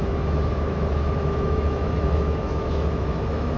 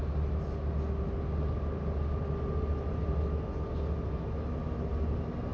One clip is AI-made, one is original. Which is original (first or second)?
second